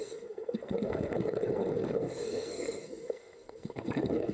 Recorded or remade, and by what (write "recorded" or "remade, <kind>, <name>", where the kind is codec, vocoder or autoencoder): remade, codec, SNAC